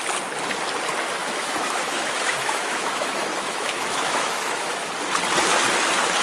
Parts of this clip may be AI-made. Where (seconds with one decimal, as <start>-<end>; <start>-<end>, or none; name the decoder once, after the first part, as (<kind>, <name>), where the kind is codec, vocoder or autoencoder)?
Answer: 1.2-4.9 (autoencoder, DAC-VAE)